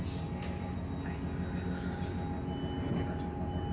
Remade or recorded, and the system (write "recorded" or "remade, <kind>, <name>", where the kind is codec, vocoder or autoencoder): recorded